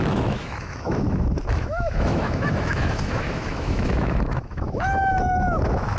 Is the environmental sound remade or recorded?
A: remade